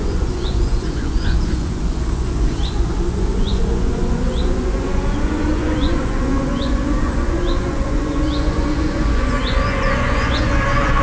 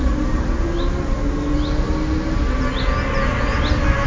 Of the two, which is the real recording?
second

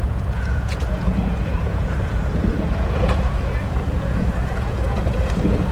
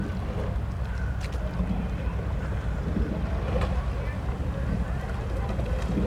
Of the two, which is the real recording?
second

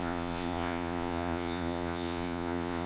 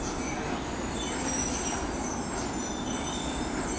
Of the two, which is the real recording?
second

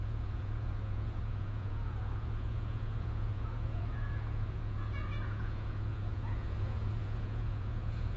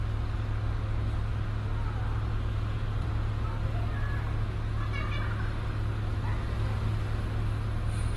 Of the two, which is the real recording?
second